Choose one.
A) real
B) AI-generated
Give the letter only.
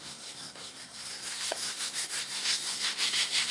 B